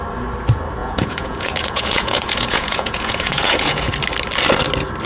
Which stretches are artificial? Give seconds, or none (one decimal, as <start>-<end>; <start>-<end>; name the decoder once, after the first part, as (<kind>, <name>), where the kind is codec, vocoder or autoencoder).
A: 0.8-3.9 (vocoder, Vocos)